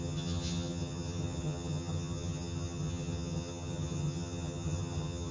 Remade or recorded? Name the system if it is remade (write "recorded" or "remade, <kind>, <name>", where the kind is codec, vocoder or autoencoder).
remade, vocoder, HiFi-GAN